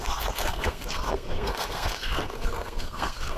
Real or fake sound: fake